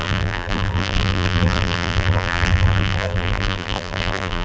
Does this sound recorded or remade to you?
remade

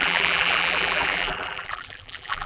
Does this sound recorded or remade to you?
remade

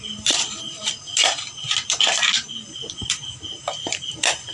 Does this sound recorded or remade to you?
remade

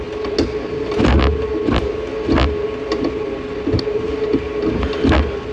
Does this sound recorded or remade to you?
recorded